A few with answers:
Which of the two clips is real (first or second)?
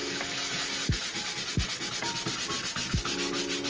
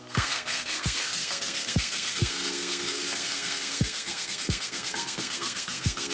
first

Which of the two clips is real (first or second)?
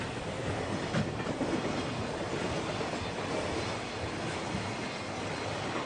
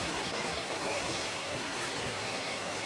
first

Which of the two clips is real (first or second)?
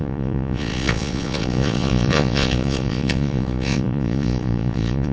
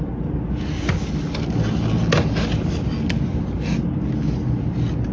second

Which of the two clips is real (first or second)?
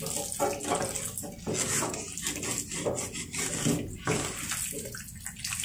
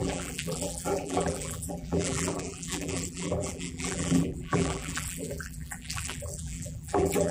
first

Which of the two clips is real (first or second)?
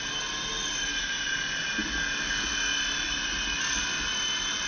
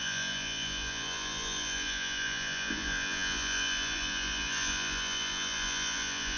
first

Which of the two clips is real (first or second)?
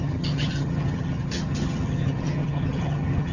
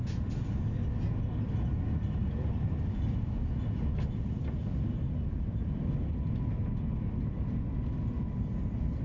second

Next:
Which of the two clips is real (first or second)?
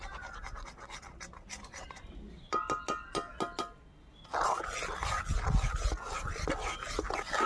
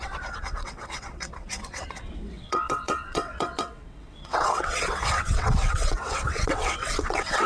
first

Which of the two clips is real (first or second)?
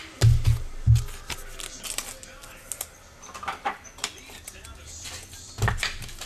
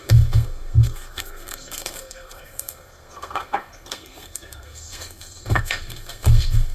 first